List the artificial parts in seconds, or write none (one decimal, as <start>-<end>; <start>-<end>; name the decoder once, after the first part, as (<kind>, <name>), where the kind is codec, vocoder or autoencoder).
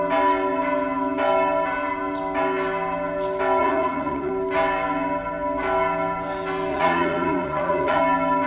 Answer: 3.6-4.3 (vocoder, Vocos); 6.7-8.0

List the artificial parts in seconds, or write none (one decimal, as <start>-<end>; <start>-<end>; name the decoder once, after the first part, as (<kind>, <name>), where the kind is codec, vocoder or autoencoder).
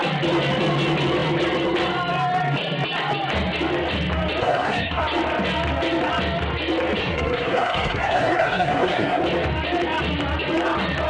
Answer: 4.4-5.0 (codec, SNAC); 7.0-9.2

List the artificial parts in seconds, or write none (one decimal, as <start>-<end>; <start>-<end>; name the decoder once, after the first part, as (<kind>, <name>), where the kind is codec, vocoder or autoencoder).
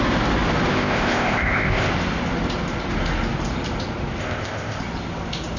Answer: 0.7-1.9 (codec, ZipCodec); 4.2-4.8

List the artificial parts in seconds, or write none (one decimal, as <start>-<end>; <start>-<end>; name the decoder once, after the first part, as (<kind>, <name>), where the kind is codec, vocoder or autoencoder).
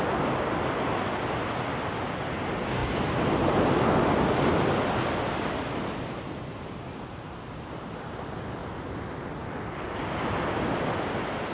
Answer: none